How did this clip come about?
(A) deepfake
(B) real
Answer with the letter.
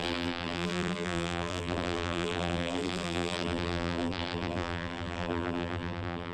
A